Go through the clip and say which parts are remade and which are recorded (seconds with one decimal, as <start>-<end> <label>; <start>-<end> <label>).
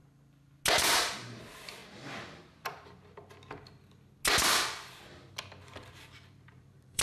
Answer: 0.0-0.7 recorded; 0.7-1.8 remade; 1.8-6.0 recorded; 6.0-7.0 remade